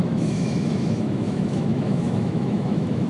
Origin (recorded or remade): remade